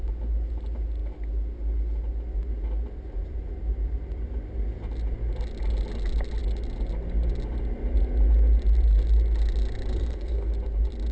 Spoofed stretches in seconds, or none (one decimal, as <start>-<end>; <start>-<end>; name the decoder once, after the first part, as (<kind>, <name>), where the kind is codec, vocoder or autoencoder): 9.9-10.5 (codec, SNAC)